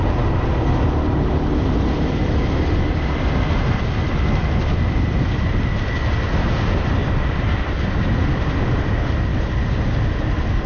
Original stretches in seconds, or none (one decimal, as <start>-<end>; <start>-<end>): 0.0-7.0; 8.6-10.7